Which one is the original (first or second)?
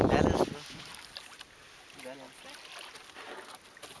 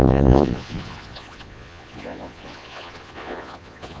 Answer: first